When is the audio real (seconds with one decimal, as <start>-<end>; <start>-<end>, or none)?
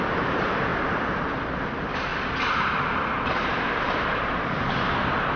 0.0-0.7; 1.2-2.1